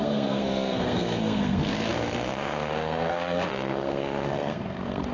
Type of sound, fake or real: fake